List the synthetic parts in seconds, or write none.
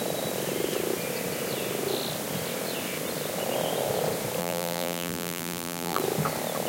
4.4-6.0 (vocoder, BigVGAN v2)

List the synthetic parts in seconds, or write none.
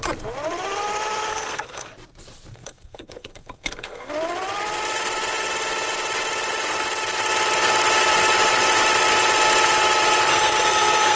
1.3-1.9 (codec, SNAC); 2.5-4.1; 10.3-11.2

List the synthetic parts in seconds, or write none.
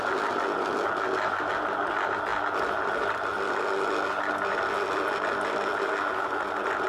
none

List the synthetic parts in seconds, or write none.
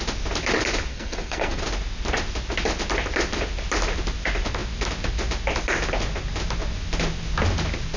0.9-1.6 (codec, SNAC)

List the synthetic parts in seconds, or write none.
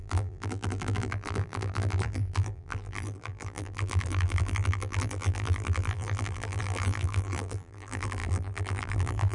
0.0-9.3 (vocoder, BigVGAN v2)